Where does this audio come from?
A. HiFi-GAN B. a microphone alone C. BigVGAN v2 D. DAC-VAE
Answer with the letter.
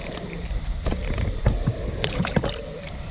C